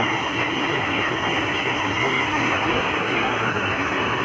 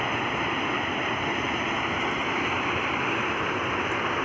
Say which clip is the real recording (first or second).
second